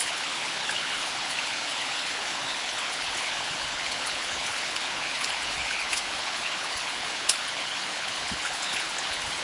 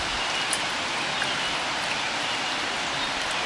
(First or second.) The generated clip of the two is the first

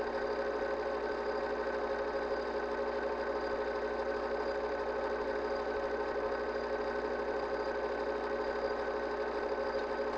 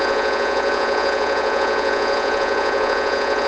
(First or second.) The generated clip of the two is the second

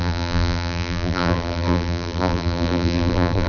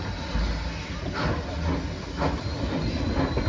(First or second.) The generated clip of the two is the first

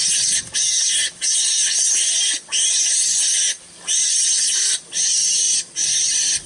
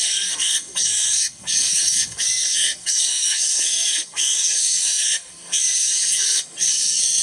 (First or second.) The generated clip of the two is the second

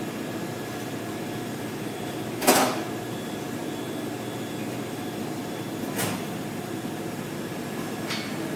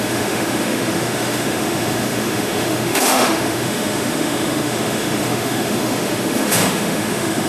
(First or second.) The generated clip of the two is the second